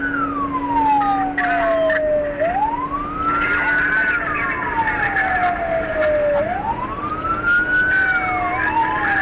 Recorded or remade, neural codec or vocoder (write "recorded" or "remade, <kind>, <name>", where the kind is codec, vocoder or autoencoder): recorded